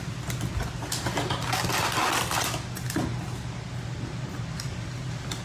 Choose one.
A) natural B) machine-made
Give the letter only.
A